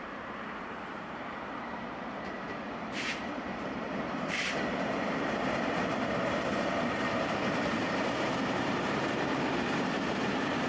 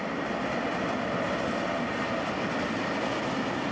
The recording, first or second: second